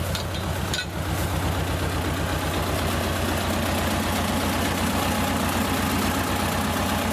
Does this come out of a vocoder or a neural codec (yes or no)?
no